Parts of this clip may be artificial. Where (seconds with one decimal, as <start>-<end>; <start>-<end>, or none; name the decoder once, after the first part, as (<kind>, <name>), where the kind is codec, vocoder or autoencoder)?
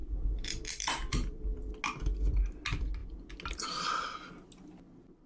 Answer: 0.0-1.7 (vocoder, BigVGAN v2)